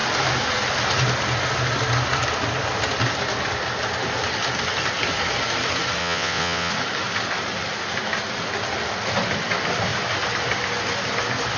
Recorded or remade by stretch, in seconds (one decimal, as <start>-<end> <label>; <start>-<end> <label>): 0.0-6.0 recorded; 6.0-6.7 remade; 6.7-11.6 recorded